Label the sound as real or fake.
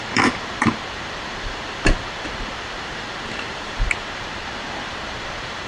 fake